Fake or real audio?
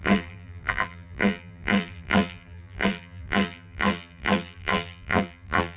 fake